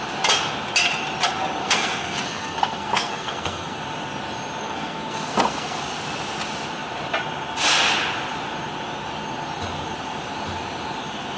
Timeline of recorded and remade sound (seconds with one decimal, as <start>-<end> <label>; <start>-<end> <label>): 0.0-1.6 recorded; 1.6-3.8 remade; 3.8-4.6 recorded; 4.6-5.8 remade; 5.8-11.4 recorded